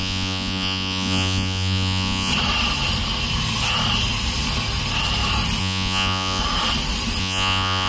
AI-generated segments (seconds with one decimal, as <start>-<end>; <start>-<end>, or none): 0.0-2.3; 5.6-6.4; 7.2-7.9